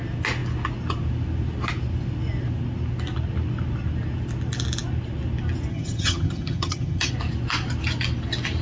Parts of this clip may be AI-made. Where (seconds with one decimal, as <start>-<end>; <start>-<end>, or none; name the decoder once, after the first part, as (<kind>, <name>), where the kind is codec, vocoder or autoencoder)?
5.7-7.1 (vocoder, HiFi-GAN)